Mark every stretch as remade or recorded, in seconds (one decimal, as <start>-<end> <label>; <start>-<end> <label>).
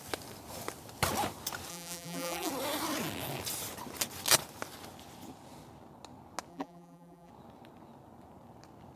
0.0-1.7 recorded; 1.7-2.5 remade; 2.5-6.5 recorded; 6.5-7.3 remade; 7.3-9.0 recorded